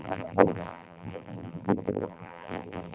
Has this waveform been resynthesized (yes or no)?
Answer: yes